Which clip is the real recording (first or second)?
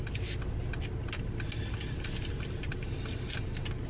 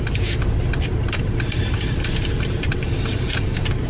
first